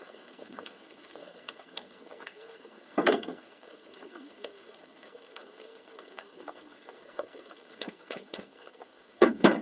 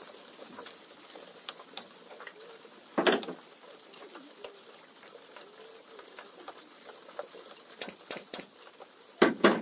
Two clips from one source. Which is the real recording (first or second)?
second